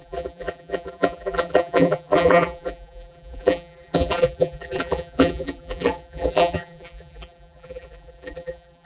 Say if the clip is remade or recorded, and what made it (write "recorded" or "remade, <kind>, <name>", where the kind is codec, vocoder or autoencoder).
remade, vocoder, BigVGAN v2